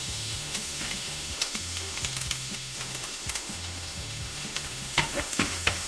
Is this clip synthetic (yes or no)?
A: yes